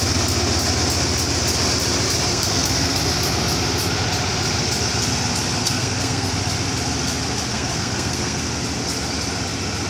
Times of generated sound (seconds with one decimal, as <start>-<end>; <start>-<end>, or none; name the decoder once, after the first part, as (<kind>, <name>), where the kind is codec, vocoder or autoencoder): 2.3-3.0 (codec, SNAC); 5.6-6.3; 7.5-8.4